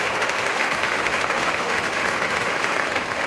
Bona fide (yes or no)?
no